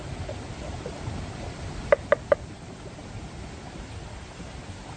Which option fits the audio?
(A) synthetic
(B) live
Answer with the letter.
B